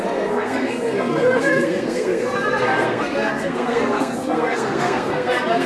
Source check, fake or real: fake